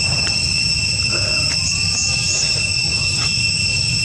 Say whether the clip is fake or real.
real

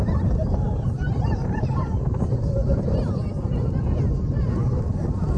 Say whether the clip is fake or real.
fake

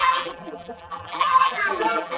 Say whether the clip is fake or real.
fake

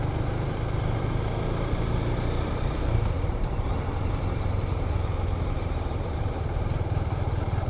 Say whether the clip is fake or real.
fake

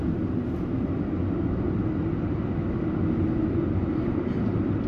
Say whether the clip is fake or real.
real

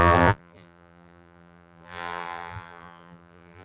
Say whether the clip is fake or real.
fake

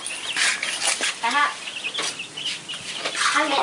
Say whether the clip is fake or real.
real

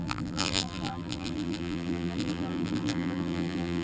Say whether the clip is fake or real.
fake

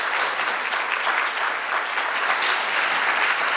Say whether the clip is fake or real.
real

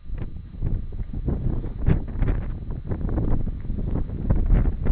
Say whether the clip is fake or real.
real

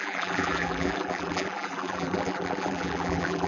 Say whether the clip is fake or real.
fake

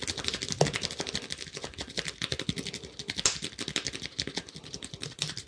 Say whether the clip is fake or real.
real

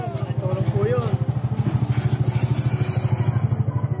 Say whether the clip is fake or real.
real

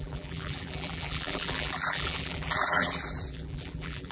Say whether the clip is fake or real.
fake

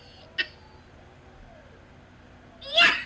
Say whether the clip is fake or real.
real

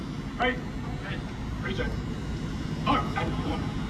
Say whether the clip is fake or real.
real